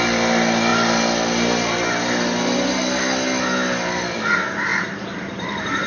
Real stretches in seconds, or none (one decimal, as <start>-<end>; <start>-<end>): 0.0-4.7